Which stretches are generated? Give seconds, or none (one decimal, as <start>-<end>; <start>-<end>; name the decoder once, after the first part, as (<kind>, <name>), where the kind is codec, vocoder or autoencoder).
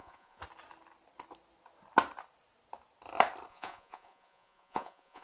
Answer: 0.0-0.4 (vocoder, Vocos); 3.5-5.2